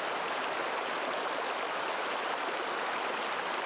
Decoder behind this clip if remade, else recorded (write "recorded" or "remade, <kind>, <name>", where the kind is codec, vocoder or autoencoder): recorded